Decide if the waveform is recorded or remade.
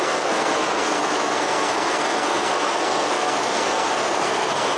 remade